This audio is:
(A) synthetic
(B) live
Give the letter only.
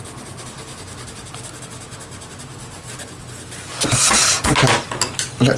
B